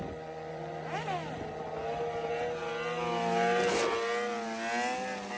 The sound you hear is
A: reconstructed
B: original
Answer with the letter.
B